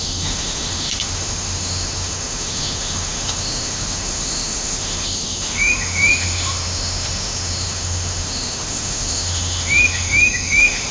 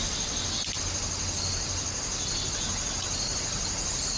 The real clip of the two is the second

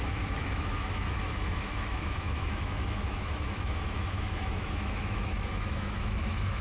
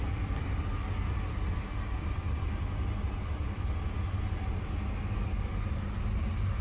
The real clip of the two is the second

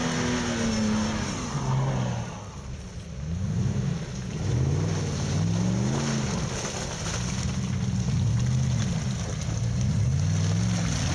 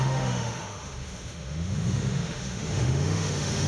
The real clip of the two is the first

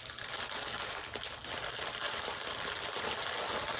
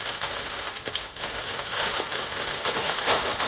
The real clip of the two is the first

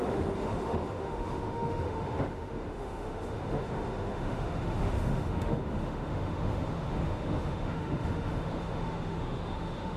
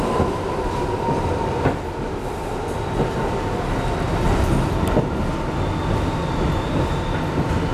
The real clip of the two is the second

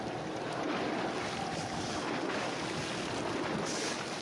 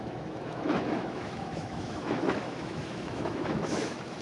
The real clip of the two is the first